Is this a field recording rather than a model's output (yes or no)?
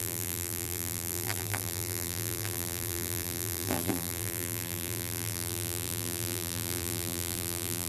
no